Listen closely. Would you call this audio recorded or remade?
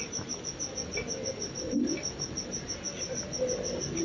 recorded